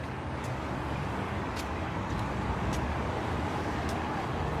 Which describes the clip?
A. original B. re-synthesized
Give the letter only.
B